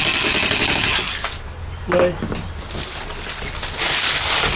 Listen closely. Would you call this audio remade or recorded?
recorded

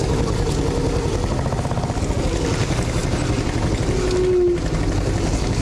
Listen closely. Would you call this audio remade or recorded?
recorded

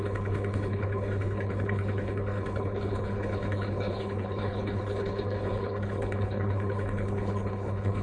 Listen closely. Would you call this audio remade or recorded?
remade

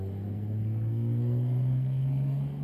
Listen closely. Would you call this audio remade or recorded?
remade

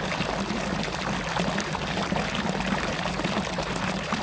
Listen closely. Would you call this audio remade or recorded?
recorded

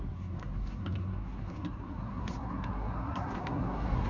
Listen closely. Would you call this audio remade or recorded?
remade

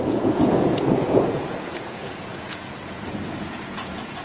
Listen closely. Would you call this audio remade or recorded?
remade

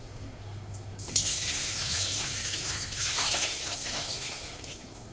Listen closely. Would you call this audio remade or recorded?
remade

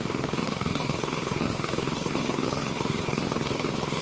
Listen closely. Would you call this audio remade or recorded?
remade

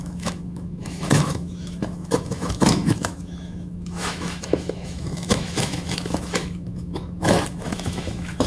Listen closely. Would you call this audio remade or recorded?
remade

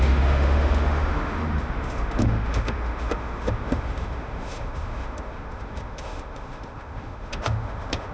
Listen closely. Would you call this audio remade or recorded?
remade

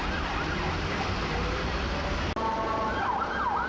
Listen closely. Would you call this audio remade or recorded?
recorded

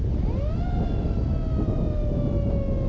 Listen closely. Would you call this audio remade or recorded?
recorded